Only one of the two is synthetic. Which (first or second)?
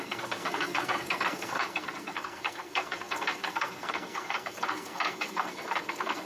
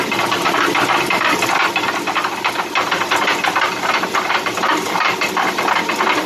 first